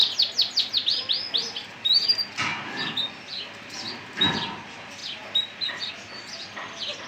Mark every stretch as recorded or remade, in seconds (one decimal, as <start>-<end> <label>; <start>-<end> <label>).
0.0-7.1 recorded